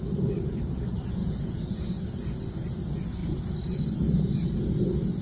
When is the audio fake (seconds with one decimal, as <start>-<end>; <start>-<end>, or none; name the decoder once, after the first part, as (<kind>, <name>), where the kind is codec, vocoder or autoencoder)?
1.2-2.0 (vocoder, Vocos)